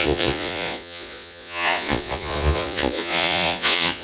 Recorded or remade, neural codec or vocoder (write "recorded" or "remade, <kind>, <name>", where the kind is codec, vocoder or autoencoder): remade, vocoder, Vocos